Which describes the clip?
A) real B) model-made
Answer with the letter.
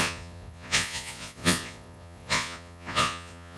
B